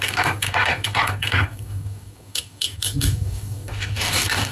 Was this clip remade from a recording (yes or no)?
yes